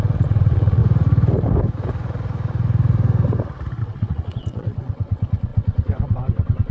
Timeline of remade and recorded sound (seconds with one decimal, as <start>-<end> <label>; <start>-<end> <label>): 0.0-0.8 remade; 0.8-3.8 recorded; 3.8-6.7 remade